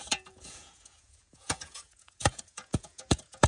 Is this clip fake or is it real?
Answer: fake